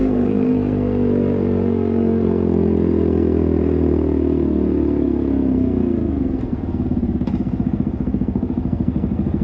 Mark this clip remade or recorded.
remade